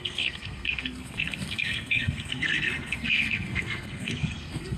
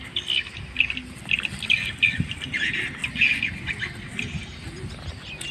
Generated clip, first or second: first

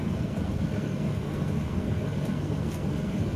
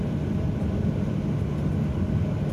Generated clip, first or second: first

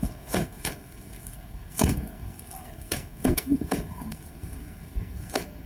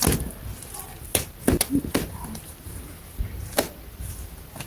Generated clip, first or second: first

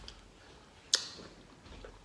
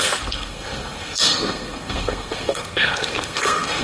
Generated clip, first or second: second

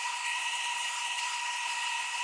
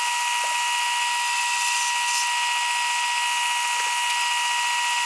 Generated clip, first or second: first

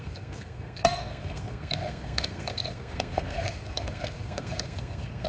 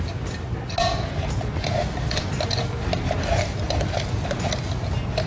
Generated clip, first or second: first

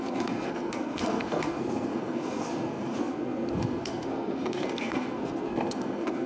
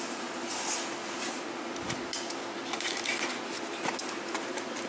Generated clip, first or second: first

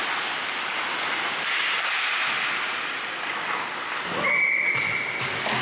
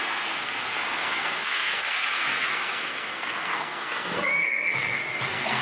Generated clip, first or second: second